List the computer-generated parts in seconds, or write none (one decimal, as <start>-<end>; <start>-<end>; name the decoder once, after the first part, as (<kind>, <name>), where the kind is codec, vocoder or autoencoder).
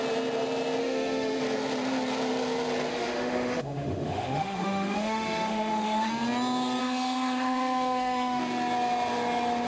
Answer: 0.8-1.4 (autoencoder, DAC-VAE); 2.9-6.1; 6.8-8.4